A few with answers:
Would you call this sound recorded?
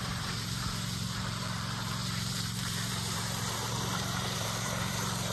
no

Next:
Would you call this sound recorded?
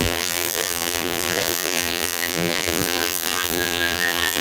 no